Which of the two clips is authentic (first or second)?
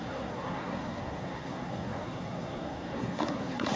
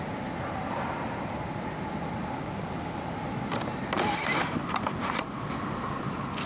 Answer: second